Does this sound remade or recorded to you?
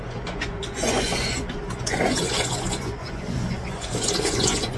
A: remade